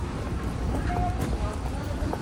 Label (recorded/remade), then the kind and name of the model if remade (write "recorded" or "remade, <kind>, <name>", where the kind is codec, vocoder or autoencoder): remade, vocoder, BigVGAN v2